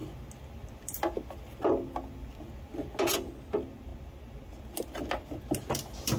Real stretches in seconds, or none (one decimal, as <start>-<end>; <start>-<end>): 0.0-6.2